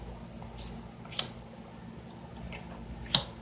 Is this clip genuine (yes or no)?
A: yes